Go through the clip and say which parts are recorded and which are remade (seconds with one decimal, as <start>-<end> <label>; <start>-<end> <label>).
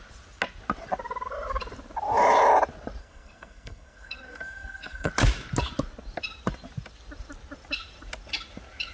0.0-3.0 recorded; 3.0-5.1 remade; 5.1-8.9 recorded